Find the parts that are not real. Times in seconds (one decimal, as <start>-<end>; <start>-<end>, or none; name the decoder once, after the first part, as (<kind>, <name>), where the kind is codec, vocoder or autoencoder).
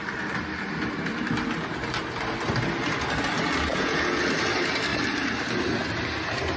3.7-4.2 (vocoder, Vocos)